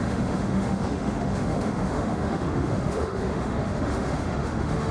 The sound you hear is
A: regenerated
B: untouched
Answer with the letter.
A